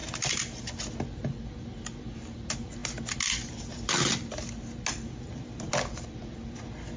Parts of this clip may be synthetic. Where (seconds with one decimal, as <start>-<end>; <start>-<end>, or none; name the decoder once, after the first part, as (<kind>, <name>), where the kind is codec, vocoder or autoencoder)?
none